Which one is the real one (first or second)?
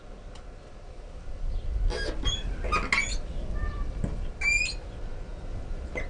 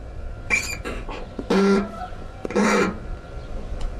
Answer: first